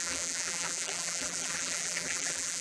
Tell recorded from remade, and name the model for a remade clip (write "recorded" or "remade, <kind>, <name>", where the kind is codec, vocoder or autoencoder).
remade, vocoder, BigVGAN v2